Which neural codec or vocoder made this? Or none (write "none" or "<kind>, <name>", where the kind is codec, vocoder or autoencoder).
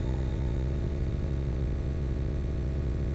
vocoder, WaveNeXt